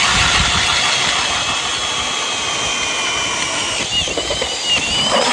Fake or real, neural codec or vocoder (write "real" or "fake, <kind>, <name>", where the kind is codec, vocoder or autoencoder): real